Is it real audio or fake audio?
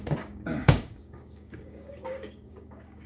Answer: fake